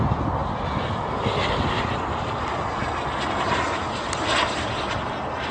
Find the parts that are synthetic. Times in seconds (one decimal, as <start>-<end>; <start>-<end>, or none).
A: none